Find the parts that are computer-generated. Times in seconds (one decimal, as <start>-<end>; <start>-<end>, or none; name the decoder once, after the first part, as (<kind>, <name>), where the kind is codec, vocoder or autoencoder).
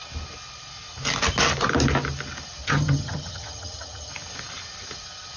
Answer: 2.6-4.1 (vocoder, HiFi-GAN)